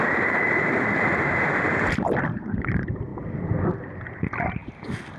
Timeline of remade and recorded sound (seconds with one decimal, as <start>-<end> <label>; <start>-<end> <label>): 0.0-5.2 recorded